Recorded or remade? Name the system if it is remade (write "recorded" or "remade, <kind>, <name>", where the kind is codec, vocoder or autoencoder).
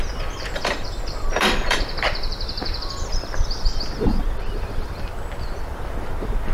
remade, vocoder, BigVGAN v2